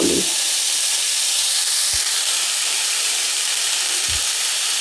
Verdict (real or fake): fake